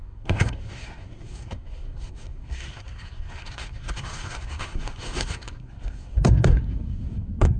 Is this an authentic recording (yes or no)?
no